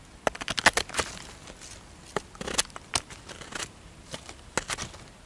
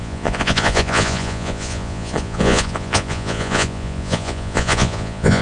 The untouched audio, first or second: first